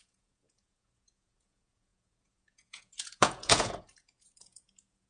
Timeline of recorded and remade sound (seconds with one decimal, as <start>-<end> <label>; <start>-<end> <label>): 0.0-5.1 remade